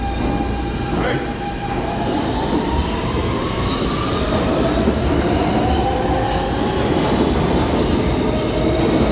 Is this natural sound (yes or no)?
yes